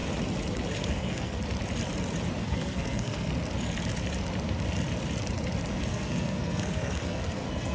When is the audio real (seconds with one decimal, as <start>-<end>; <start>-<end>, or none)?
0.0-0.8; 1.4-2.4; 3.3-5.7